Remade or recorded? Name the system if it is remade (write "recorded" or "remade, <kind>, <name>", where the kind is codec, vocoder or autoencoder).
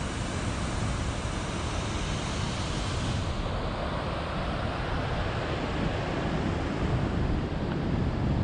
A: recorded